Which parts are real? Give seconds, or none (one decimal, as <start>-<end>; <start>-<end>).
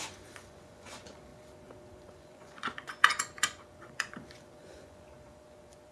none